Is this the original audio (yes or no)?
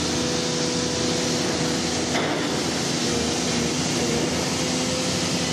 yes